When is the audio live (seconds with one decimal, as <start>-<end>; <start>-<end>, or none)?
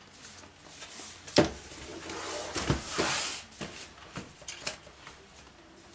0.0-5.9